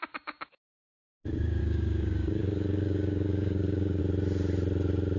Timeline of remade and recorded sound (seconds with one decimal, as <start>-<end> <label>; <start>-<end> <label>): 0.0-1.6 recorded; 1.6-4.0 remade; 4.0-5.2 recorded